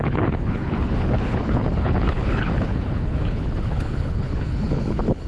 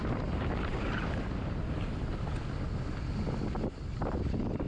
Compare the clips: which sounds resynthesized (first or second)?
first